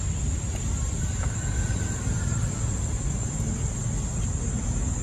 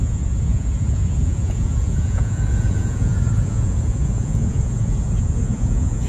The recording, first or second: first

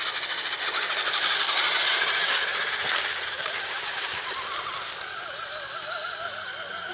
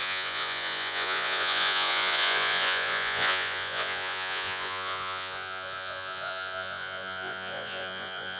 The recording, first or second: first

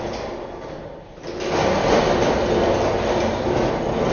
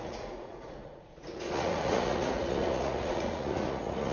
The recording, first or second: first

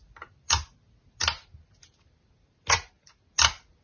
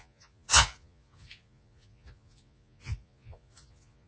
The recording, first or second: first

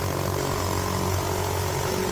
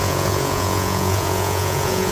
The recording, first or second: first